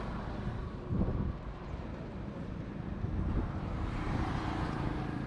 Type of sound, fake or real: fake